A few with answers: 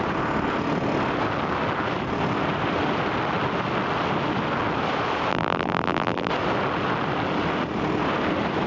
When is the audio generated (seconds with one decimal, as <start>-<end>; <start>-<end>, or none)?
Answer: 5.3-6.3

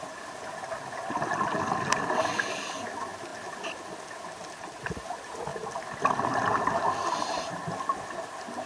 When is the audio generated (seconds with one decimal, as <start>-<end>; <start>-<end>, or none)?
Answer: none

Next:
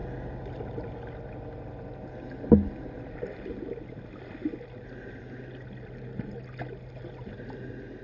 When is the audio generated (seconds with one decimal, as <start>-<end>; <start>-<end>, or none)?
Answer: none

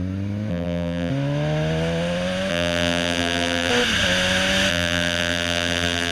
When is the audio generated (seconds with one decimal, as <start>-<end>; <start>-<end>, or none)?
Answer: 0.5-1.1; 2.5-3.7; 4.7-6.1